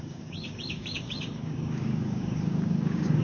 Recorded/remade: remade